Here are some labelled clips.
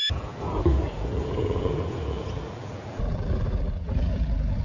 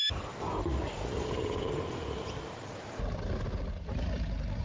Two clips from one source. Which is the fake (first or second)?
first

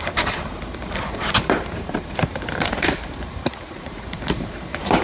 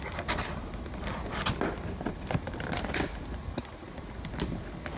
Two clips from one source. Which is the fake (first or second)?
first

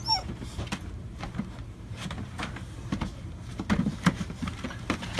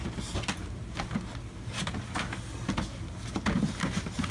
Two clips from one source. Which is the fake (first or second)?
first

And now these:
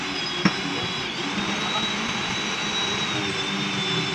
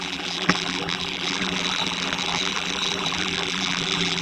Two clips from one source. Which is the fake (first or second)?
second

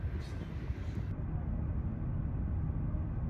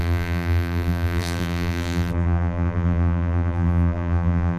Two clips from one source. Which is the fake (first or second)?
second